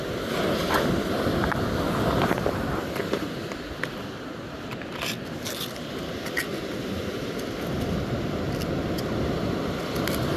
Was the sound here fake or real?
real